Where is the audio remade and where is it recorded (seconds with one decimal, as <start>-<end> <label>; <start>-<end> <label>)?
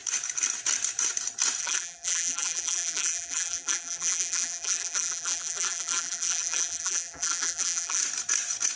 0.0-1.6 recorded; 1.6-8.0 remade; 8.0-8.8 recorded